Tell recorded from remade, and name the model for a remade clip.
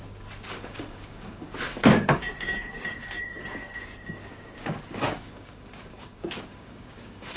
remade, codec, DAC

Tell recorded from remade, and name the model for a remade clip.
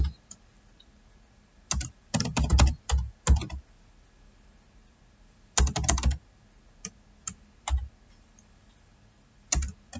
recorded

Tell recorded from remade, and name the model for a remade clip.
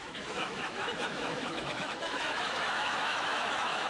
remade, autoencoder, DAC-VAE